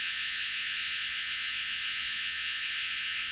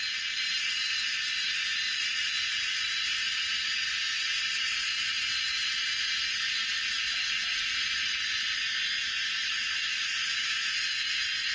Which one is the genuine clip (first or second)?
second